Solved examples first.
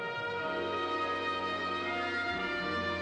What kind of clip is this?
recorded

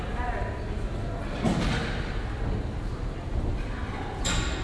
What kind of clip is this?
recorded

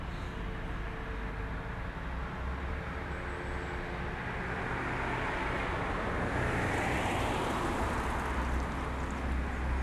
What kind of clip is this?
recorded